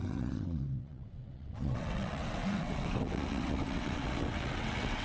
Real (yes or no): no